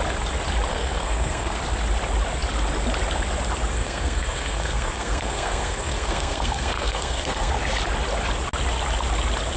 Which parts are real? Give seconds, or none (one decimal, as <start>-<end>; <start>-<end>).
0.0-0.7; 1.6-3.7; 7.5-9.6